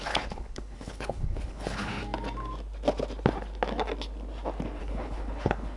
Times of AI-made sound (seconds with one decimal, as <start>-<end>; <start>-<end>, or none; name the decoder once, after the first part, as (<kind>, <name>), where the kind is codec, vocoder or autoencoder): 0.0-2.0 (codec, HILCodec); 4.8-5.8